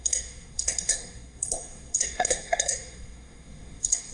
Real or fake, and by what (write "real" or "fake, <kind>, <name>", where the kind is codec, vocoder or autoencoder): fake, codec, SNAC